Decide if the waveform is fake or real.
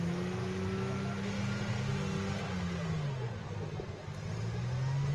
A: real